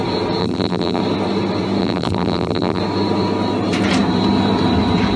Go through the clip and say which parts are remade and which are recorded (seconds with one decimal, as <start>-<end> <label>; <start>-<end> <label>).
0.0-0.4 recorded; 0.4-1.0 remade; 1.0-1.8 recorded; 1.8-2.8 remade; 2.8-5.2 recorded